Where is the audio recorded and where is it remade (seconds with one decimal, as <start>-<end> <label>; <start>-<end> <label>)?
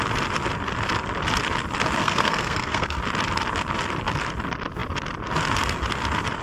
0.0-2.0 recorded; 2.0-3.0 remade; 3.0-6.4 recorded